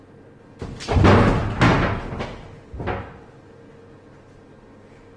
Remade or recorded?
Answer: recorded